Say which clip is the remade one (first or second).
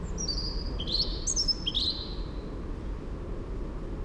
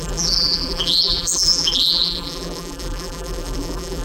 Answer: second